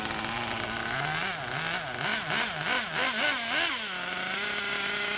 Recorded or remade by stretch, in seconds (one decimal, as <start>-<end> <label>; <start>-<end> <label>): 0.0-5.2 recorded